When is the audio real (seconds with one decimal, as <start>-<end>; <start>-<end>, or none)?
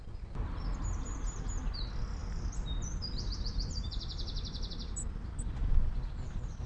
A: 0.0-6.7